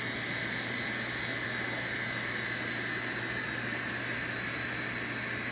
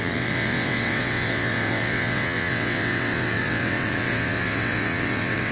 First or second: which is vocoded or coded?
second